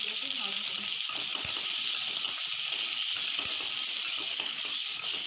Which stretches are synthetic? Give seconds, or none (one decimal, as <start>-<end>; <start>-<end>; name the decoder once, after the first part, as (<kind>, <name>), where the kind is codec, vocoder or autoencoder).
4.1-5.3 (codec, DAC)